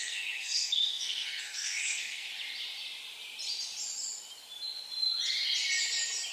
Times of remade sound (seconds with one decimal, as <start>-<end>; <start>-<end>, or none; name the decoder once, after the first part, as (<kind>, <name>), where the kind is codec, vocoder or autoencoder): 0.0-2.3 (codec, SNAC)